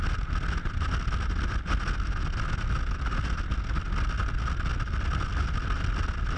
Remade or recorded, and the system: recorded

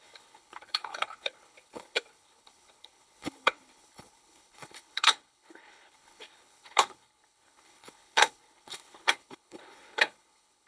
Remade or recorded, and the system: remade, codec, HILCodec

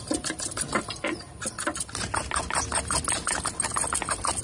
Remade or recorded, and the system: recorded